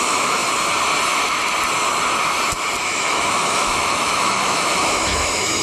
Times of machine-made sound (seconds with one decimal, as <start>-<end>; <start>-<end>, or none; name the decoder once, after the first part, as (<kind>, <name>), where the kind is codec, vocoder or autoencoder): 0.0-0.4 (autoencoder, DAC-VAE); 2.8-5.6